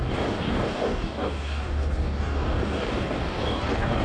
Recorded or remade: remade